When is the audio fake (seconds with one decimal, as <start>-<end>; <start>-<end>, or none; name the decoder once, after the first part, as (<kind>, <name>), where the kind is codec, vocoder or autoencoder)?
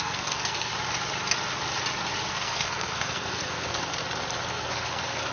0.0-0.7 (codec, SNAC); 2.3-4.0; 4.5-5.3